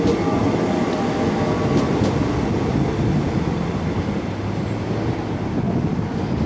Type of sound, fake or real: real